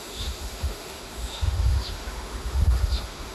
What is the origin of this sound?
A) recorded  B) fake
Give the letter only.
B